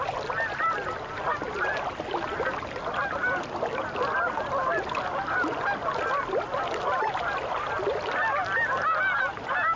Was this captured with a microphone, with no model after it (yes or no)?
yes